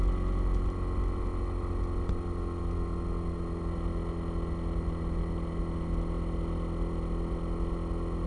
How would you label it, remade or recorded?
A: recorded